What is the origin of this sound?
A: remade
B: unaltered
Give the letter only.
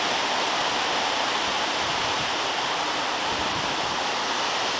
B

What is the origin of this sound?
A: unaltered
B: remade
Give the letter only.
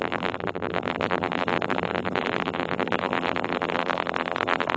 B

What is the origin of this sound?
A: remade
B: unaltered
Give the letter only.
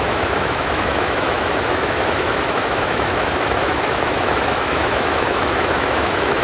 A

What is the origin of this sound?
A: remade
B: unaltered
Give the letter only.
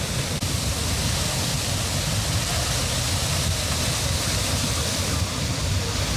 B